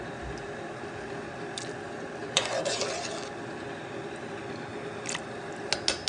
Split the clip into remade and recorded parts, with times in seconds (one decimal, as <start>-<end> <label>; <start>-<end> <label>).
0.0-2.2 recorded; 2.2-2.8 remade; 2.8-6.1 recorded